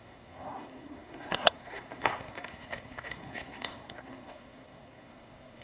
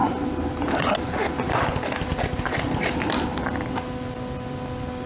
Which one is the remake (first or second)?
first